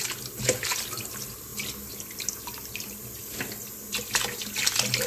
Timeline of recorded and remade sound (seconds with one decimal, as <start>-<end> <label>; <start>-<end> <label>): 0.0-5.1 recorded